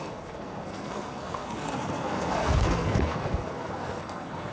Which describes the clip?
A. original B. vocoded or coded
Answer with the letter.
B